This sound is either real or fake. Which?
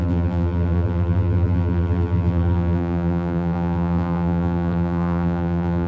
fake